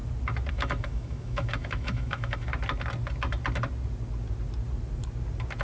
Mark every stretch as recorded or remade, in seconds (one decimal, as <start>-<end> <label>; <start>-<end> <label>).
0.0-0.5 recorded; 0.5-2.5 remade; 2.5-5.6 recorded